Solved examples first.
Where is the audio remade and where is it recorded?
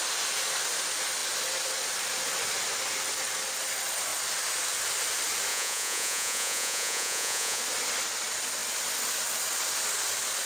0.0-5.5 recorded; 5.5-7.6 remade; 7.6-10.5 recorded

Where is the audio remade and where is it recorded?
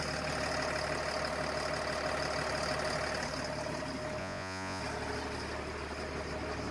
0.0-4.2 recorded; 4.2-4.8 remade; 4.8-6.7 recorded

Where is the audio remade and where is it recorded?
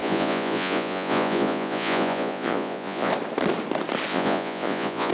0.0-3.1 remade; 3.1-4.1 recorded; 4.1-5.1 remade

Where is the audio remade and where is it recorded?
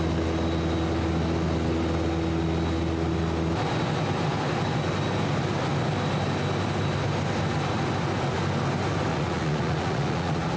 0.0-9.1 recorded; 9.1-10.6 remade